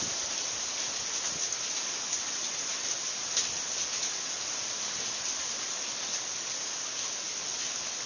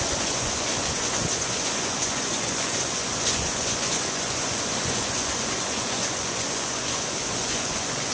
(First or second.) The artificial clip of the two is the second